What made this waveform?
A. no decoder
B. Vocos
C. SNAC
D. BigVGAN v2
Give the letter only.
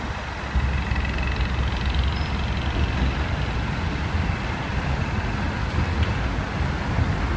A